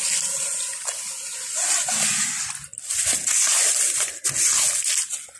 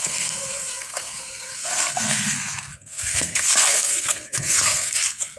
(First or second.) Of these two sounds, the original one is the first